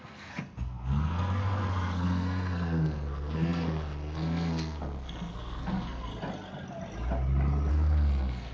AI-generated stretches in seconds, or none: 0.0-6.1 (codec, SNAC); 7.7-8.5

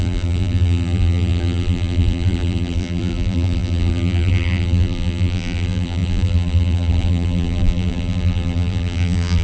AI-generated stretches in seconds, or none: 0.0-9.4 (vocoder, BigVGAN v2)

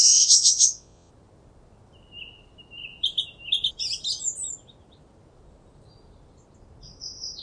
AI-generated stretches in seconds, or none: 0.0-1.1 (vocoder, WaveNeXt)